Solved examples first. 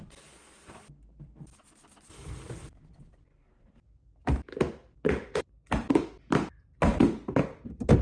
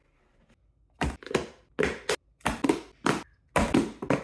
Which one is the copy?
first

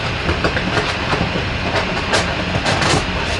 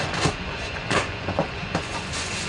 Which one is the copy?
second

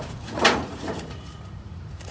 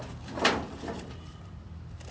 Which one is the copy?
first